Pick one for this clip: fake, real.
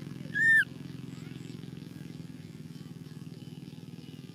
fake